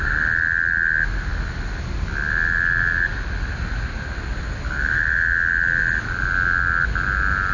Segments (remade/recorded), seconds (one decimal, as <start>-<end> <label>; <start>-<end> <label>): 0.0-7.5 recorded